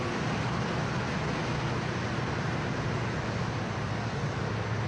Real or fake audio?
real